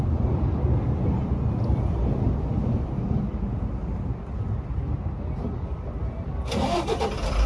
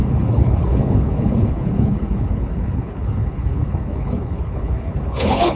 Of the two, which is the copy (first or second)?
second